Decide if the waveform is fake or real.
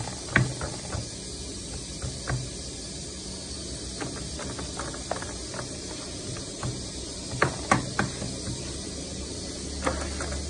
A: real